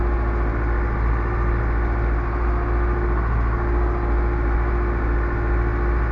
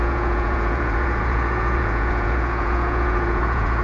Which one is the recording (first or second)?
first